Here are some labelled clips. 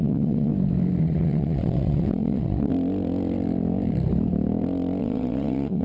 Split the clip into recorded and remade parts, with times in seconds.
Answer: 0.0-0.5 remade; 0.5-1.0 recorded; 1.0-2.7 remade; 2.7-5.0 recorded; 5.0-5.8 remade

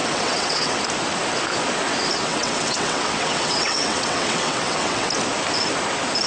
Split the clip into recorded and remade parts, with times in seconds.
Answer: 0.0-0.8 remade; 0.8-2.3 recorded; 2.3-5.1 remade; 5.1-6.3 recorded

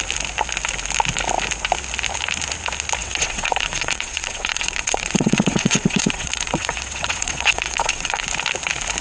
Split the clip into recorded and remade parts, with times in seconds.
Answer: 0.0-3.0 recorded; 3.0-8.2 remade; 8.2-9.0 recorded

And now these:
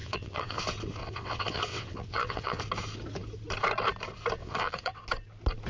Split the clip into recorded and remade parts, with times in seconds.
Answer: 0.0-0.6 remade; 0.6-1.0 recorded; 1.0-2.6 remade; 2.6-4.4 recorded; 4.4-5.0 remade; 5.0-5.7 recorded